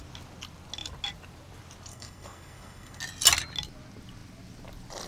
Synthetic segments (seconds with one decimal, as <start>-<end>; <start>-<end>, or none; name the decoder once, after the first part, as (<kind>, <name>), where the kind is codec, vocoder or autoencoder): 1.9-3.0 (codec, SNAC)